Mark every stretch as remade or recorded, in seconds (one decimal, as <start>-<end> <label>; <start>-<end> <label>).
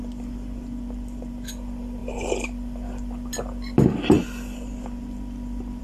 0.0-5.8 remade